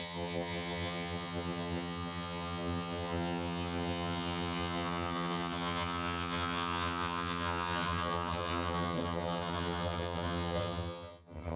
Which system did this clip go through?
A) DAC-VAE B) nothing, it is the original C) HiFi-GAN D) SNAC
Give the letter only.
C